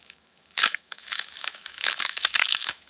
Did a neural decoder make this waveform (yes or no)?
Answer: yes